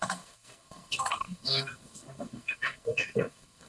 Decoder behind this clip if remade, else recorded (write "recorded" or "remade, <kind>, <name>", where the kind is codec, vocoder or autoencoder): remade, codec, SNAC